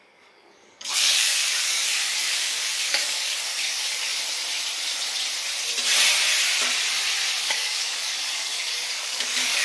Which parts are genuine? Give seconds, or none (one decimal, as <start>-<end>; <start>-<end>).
4.1-7.4